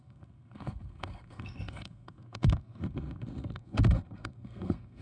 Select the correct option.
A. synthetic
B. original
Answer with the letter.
A